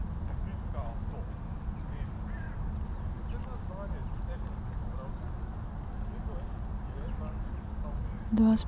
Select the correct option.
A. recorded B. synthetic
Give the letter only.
A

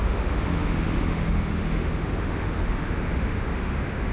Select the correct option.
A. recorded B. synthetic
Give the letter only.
B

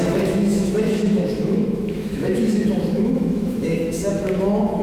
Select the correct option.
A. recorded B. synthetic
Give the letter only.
B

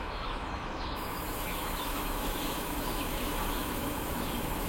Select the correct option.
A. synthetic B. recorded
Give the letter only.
A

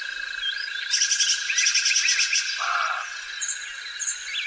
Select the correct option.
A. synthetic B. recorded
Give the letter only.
B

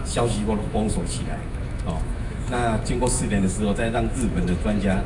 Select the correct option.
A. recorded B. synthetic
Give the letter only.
B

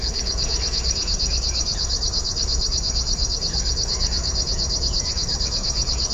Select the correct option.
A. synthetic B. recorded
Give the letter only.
A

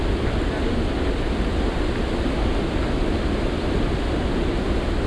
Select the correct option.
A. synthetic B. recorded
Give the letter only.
B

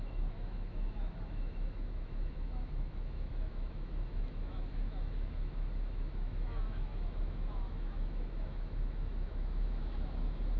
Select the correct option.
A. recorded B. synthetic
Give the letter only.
B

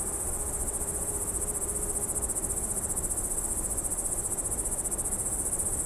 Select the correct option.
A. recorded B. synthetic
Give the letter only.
A